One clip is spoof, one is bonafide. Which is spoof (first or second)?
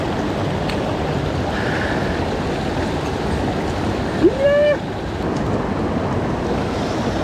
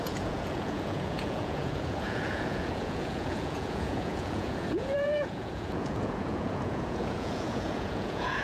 second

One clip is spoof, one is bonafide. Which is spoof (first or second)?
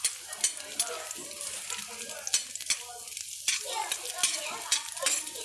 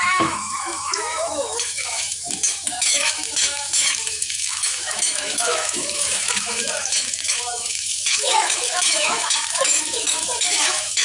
second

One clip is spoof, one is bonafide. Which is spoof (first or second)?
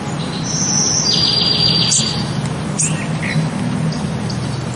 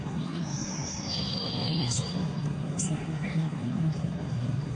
second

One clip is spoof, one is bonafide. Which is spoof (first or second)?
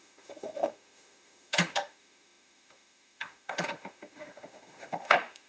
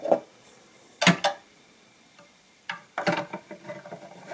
first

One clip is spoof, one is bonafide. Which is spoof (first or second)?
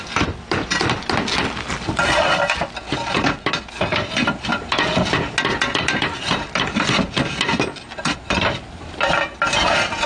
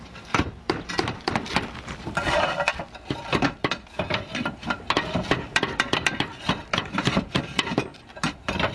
second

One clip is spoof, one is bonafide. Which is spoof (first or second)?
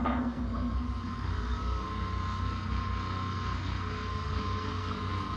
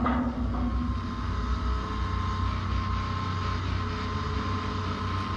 first